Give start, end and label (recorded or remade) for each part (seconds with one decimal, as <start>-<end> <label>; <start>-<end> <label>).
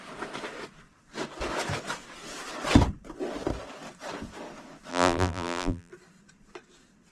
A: 0.0-4.9 recorded; 4.9-5.9 remade; 5.9-7.1 recorded